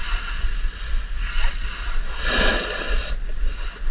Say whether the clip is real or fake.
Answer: real